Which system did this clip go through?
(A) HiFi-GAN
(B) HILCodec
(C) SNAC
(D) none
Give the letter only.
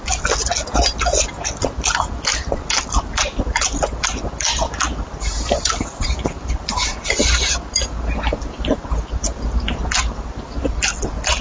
D